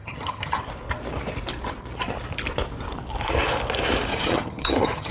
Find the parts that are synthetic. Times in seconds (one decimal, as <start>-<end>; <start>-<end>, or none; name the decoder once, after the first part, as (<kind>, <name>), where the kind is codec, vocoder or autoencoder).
0.0-0.6 (vocoder, HiFi-GAN); 4.1-5.1